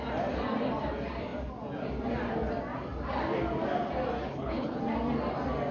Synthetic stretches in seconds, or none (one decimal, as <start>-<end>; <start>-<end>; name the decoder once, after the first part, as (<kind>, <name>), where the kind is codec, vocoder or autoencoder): 4.3-4.8 (codec, HILCodec)